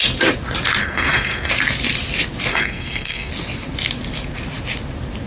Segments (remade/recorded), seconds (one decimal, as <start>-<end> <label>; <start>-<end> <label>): 0.0-0.8 recorded; 0.8-1.5 remade; 1.5-2.5 recorded; 2.5-3.3 remade; 3.3-5.3 recorded